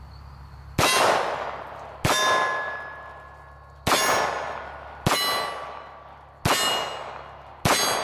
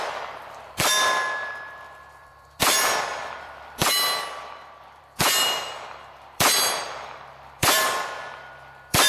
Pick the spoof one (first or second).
second